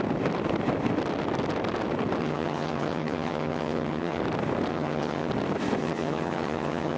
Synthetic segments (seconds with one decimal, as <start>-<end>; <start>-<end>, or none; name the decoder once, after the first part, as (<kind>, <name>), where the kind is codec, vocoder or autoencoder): 2.2-4.2 (vocoder, HiFi-GAN); 4.7-5.3; 5.8-7.0